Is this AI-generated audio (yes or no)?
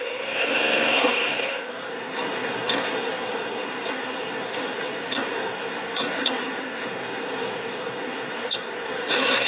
yes